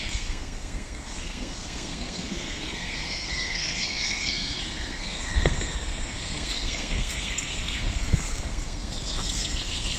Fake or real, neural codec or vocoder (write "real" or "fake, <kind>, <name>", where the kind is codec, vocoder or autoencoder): fake, codec, SNAC